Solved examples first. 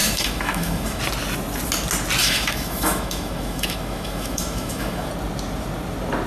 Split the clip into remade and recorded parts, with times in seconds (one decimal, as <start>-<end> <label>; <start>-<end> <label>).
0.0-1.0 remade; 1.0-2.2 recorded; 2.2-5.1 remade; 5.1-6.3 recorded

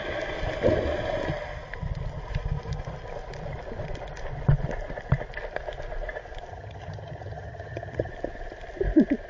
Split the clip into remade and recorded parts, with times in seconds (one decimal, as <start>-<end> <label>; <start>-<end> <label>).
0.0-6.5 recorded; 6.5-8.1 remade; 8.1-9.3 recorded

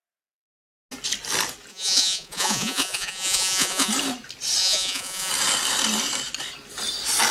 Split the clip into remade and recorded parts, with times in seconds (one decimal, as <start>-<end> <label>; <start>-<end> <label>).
0.0-1.7 recorded; 1.7-3.9 remade; 3.9-4.6 recorded; 4.6-5.3 remade; 5.3-7.3 recorded

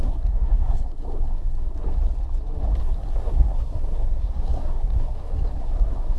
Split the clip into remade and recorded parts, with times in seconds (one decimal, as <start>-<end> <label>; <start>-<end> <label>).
0.0-2.0 remade; 2.0-2.8 recorded; 2.8-6.2 remade

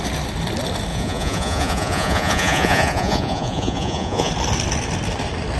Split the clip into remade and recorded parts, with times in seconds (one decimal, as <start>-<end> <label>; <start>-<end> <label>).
0.0-0.9 recorded; 0.9-4.3 remade; 4.3-5.6 recorded

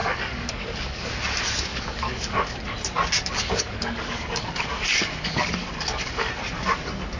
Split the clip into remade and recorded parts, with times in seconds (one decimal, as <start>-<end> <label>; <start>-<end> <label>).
0.0-1.1 remade; 1.1-1.7 recorded; 1.7-2.6 remade; 2.6-3.2 recorded; 3.2-6.3 remade; 6.3-7.2 recorded

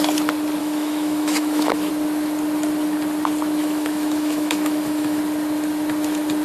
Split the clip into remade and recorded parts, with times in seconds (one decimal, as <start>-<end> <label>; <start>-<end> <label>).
0.0-0.6 recorded; 0.6-1.9 remade; 1.9-3.6 recorded; 3.6-5.2 remade; 5.2-6.4 recorded